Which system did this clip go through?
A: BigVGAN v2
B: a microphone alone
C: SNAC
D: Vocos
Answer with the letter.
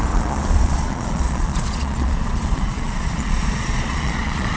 D